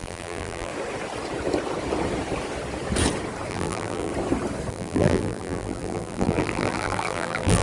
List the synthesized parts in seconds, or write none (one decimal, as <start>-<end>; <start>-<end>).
0.0-0.7; 3.5-4.1; 4.7-7.6